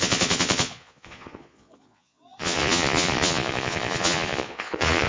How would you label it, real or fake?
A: fake